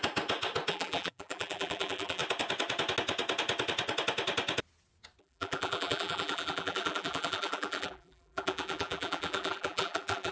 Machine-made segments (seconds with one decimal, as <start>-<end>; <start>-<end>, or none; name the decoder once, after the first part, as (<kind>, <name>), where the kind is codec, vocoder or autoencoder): 0.7-2.2 (vocoder, BigVGAN v2); 5.2-10.3